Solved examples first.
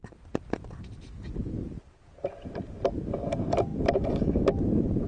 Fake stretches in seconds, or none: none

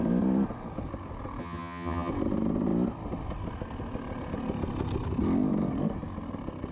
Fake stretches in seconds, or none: 1.4-2.1